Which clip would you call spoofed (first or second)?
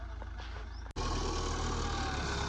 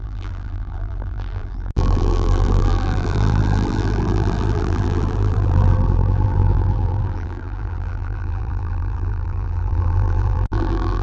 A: second